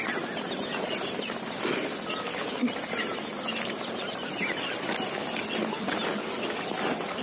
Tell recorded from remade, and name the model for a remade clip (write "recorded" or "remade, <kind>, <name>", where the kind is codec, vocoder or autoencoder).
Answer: recorded